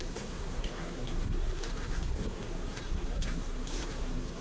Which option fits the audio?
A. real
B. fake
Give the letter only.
B